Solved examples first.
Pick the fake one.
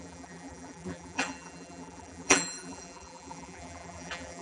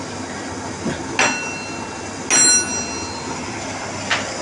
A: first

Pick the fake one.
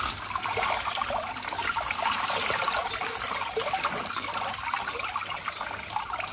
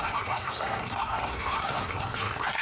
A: second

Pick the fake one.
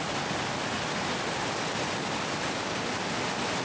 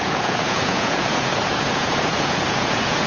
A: second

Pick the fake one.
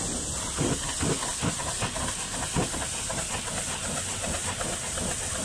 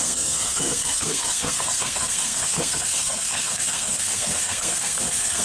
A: second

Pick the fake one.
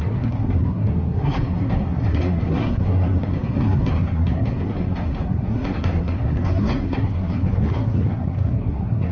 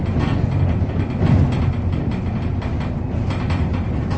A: first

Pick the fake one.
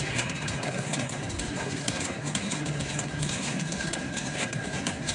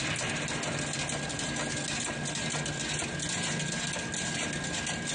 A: first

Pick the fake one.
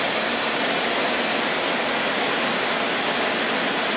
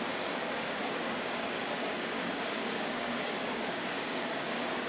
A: second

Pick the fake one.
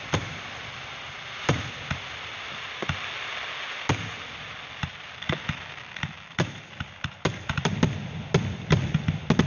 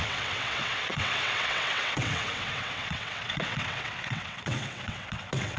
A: second